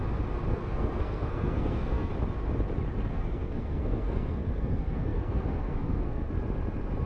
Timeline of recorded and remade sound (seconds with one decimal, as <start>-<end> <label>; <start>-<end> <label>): 0.0-0.5 recorded; 0.5-2.1 remade; 2.1-3.1 recorded; 3.1-6.3 remade; 6.3-7.1 recorded